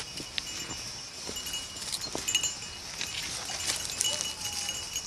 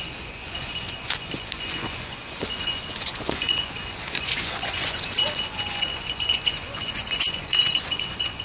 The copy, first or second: second